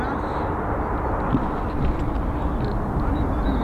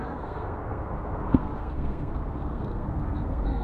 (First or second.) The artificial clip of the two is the second